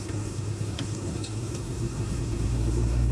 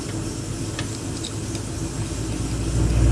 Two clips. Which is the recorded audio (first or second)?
second